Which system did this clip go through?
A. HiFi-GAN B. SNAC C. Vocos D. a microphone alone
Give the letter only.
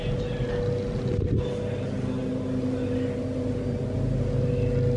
D